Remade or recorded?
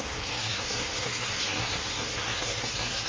remade